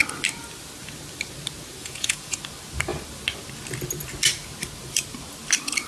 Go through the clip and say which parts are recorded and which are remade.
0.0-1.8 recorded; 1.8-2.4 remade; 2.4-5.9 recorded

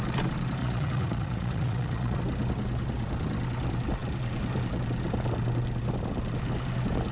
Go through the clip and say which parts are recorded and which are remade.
0.0-0.6 recorded; 0.6-2.2 remade; 2.2-7.1 recorded

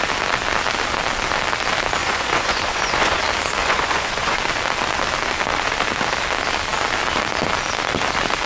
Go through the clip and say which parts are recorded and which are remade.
0.0-2.0 recorded; 2.0-3.2 remade; 3.2-3.6 recorded; 3.6-4.4 remade; 4.4-8.5 recorded

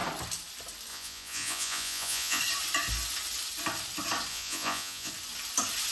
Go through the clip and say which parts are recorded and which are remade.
0.0-0.9 recorded; 0.9-2.4 remade; 2.4-4.3 recorded; 4.3-5.1 remade; 5.1-5.9 recorded

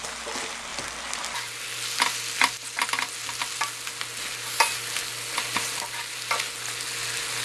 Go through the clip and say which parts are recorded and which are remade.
0.0-7.4 recorded